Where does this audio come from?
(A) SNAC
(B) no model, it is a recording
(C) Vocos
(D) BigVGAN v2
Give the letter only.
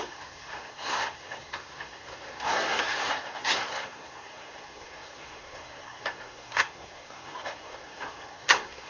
A